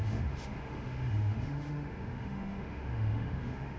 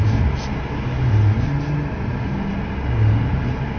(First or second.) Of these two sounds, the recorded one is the second